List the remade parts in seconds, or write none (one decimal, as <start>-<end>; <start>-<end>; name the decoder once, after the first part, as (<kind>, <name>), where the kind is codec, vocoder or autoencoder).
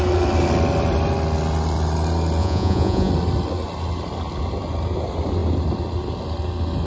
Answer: 2.4-3.1 (vocoder, Vocos)